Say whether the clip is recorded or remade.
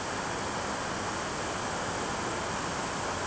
recorded